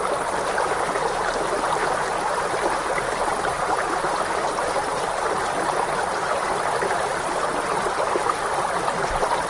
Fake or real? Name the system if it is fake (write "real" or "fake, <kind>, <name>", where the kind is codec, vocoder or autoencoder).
real